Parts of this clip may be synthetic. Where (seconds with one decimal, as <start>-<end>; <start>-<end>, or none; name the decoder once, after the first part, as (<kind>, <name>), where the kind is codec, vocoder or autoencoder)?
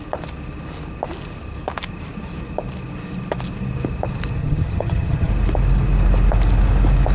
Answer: 4.4-5.3 (vocoder, HiFi-GAN)